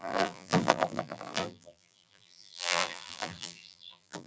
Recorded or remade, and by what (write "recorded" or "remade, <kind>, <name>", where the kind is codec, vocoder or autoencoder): remade, vocoder, BigVGAN v2